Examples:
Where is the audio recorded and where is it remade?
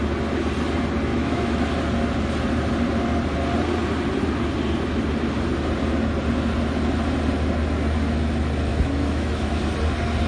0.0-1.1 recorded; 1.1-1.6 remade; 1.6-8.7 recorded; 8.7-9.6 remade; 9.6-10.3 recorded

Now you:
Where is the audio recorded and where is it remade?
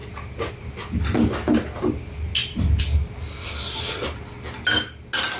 0.0-5.4 recorded